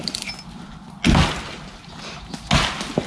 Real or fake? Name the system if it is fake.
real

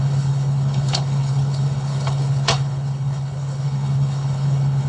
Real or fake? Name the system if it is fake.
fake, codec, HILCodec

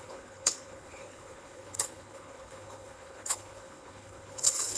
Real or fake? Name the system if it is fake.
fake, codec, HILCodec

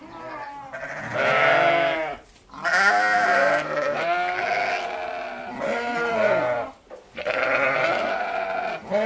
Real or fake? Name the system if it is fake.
real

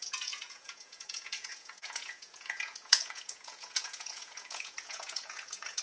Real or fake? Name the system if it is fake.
fake, vocoder, Vocos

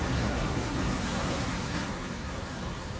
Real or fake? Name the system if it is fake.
fake, codec, SNAC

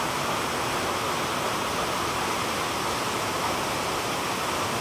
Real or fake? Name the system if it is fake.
real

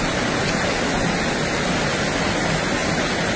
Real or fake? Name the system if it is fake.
real